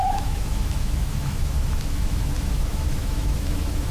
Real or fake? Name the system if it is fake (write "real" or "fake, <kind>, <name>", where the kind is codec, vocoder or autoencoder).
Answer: fake, autoencoder, DAC-VAE